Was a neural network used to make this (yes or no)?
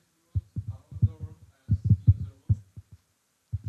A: yes